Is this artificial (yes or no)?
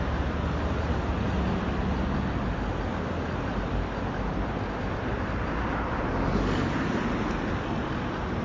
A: no